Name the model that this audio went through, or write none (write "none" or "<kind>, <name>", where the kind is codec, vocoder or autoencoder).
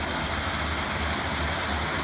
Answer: none